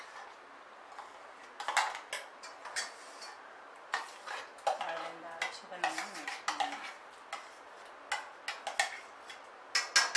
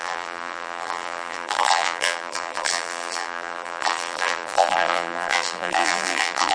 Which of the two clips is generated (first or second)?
second